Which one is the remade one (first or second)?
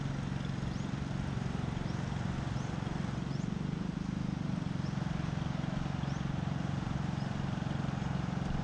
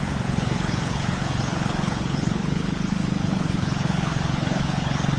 second